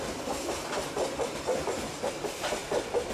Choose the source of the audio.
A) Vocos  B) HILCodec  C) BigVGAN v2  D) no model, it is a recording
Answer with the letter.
D